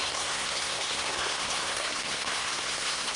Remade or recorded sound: remade